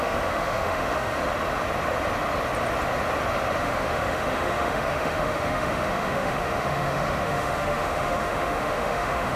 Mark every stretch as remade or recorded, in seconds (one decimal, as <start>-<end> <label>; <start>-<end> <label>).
0.0-1.2 remade; 1.2-3.6 recorded; 3.6-9.4 remade

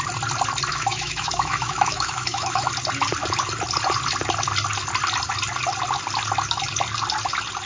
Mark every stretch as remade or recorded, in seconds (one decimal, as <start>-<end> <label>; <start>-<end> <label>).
0.0-0.7 recorded; 0.7-2.7 remade; 2.7-7.7 recorded

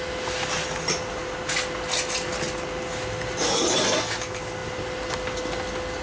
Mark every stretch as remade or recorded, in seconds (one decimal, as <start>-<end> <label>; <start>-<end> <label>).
0.0-6.0 recorded